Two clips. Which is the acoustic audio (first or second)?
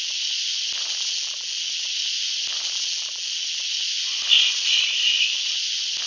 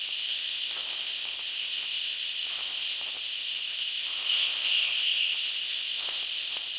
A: first